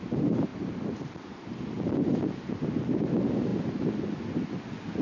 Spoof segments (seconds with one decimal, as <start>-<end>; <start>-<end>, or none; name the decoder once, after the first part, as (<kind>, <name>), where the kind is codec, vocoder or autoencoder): none

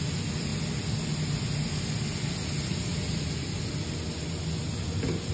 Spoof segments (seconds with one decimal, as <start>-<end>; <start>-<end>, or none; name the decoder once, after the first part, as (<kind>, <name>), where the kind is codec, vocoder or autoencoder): none

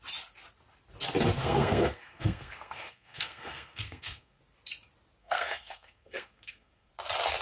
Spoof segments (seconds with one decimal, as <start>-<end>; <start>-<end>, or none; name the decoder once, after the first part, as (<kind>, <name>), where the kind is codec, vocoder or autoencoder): 1.4-4.4 (codec, SNAC); 5.2-6.9

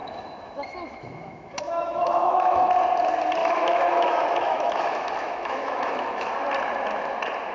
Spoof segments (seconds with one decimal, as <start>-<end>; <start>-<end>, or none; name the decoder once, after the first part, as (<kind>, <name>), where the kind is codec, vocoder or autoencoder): 0.0-2.7 (autoencoder, DAC-VAE); 3.4-6.3

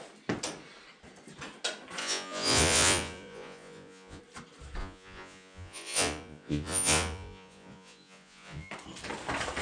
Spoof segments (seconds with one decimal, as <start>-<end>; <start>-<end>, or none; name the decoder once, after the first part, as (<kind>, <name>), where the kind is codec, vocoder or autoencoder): 2.0-4.2 (vocoder, Vocos); 4.8-8.7

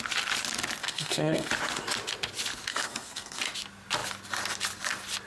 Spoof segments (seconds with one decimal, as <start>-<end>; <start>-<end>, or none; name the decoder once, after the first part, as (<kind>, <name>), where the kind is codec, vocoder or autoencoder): 0.8-1.5 (codec, SNAC); 2.7-3.4

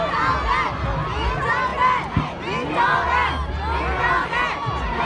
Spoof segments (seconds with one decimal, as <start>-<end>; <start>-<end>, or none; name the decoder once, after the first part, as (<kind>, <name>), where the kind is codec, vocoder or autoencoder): none

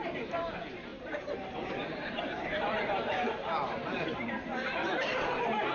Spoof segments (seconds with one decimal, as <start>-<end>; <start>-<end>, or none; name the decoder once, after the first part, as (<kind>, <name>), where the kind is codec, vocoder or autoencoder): 0.9-4.3 (vocoder, BigVGAN v2)